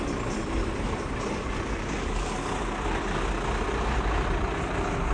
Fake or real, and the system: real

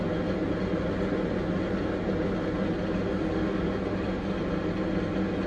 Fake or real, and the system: real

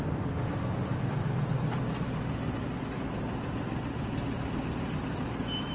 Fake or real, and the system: real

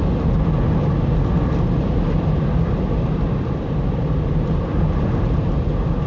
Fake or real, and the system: real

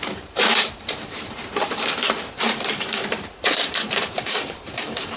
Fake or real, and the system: fake, vocoder, BigVGAN v2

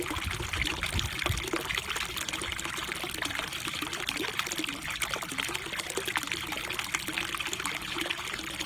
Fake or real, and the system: real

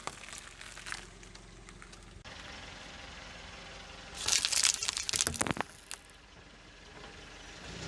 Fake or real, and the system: real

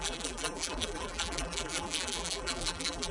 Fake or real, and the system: fake, vocoder, BigVGAN v2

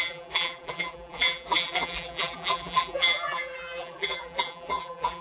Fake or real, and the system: fake, vocoder, BigVGAN v2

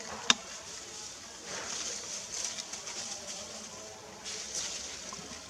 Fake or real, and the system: real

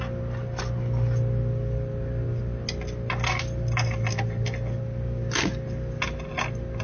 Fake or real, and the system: real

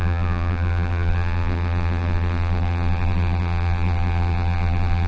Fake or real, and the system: fake, vocoder, BigVGAN v2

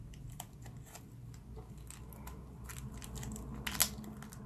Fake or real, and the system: real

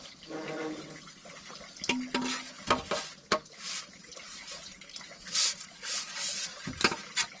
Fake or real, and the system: real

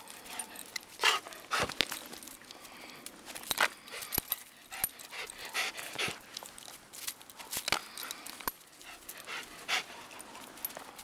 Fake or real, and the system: real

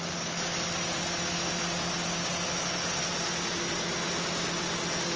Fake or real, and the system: real